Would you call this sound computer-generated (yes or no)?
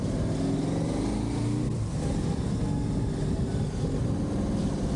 no